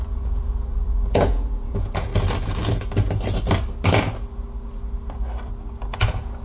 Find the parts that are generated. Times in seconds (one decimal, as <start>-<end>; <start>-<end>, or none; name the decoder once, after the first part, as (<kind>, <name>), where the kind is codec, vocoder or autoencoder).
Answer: 0.0-2.1 (vocoder, Vocos); 5.9-6.4